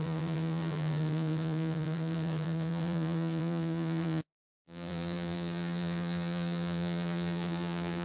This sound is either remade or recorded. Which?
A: remade